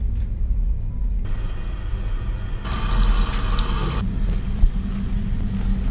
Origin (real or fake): real